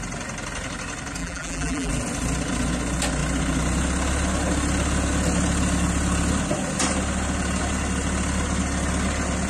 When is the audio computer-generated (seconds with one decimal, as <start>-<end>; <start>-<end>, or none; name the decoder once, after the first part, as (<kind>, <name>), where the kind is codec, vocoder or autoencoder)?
1.2-1.9 (vocoder, BigVGAN v2)